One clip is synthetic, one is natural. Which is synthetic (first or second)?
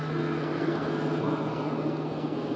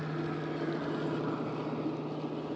first